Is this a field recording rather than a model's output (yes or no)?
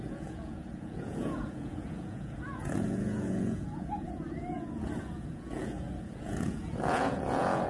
no